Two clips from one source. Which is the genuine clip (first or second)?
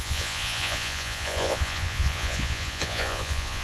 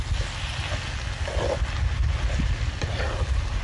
second